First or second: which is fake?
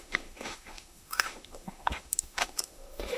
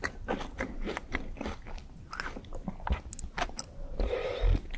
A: first